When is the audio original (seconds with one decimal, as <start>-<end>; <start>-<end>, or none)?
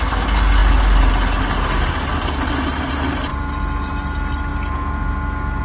0.0-5.6